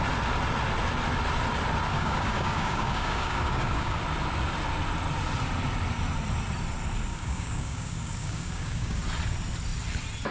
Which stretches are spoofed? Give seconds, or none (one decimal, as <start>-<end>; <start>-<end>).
1.9-4.0; 7.1-9.0